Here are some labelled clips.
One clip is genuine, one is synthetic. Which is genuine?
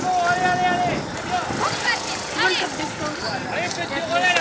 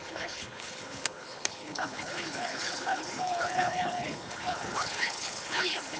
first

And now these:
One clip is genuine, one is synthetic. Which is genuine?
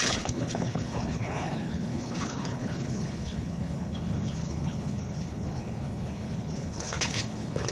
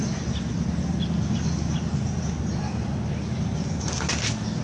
second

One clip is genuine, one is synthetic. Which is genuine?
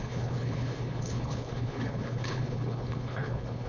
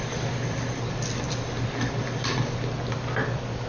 second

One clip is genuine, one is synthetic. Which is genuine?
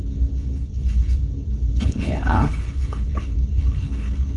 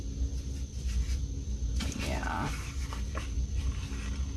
second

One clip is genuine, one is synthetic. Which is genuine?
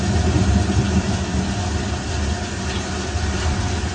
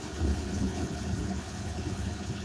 first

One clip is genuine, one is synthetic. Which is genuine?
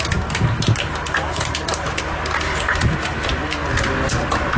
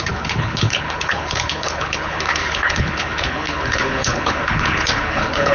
first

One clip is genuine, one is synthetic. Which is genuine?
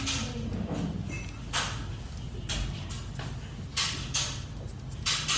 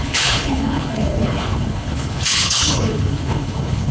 first